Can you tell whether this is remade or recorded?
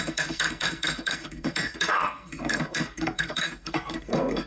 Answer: remade